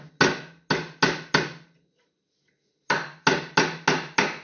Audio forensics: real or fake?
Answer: real